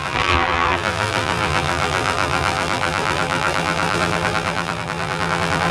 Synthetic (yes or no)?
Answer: yes